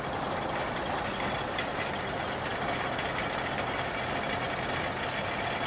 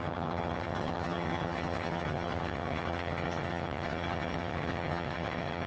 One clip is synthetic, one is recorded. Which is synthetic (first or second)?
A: second